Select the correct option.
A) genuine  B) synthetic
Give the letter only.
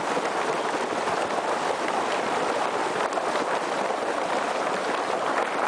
A